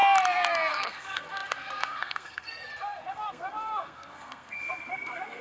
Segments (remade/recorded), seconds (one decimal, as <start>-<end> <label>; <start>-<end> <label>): 0.0-0.7 recorded; 0.7-5.4 remade